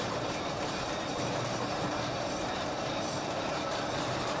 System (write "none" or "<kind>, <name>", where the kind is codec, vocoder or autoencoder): vocoder, BigVGAN v2